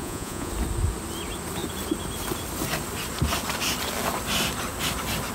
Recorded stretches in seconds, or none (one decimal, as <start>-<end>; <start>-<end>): 0.5-5.3